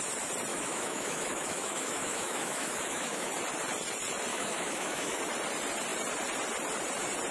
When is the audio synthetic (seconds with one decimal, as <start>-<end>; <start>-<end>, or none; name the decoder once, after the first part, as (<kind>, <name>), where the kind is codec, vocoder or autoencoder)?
0.5-3.3 (autoencoder, DAC-VAE); 4.3-5.2